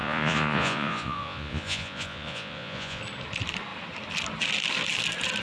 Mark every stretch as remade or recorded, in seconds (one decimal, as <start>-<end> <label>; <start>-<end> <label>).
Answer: 0.0-3.0 remade; 3.0-5.4 recorded